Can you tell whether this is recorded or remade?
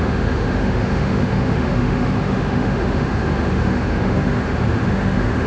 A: remade